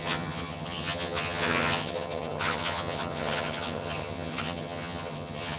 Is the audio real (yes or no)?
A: no